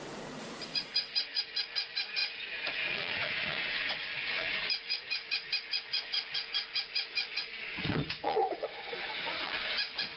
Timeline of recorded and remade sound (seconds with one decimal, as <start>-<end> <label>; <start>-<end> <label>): 0.0-10.2 remade